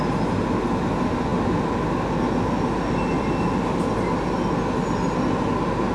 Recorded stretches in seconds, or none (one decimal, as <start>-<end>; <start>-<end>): 0.0-5.9